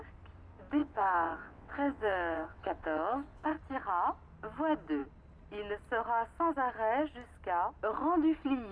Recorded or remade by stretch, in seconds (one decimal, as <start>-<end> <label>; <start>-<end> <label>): 0.0-0.8 recorded; 0.8-3.5 remade; 3.5-8.7 recorded